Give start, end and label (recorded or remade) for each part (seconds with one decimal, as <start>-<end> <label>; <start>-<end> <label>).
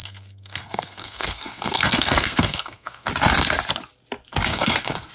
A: 0.0-3.1 remade; 3.1-4.5 recorded; 4.5-5.1 remade